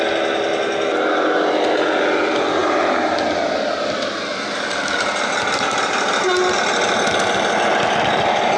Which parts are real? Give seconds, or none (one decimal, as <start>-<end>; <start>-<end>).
0.0-8.6